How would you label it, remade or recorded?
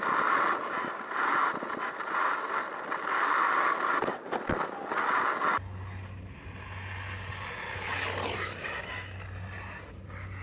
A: recorded